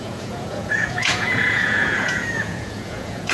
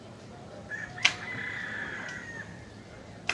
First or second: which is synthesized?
first